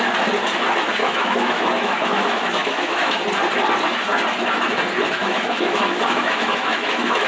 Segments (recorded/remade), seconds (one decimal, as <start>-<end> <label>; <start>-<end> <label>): 0.0-1.0 recorded; 1.0-3.2 remade; 3.2-5.2 recorded; 5.2-7.3 remade